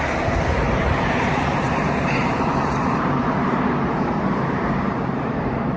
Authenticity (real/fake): fake